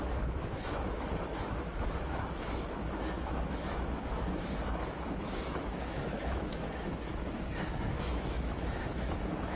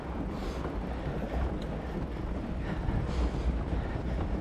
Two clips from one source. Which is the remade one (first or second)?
first